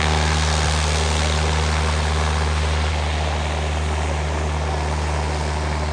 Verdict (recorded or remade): recorded